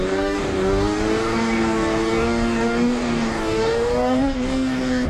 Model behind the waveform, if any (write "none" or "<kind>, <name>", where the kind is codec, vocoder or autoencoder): codec, DAC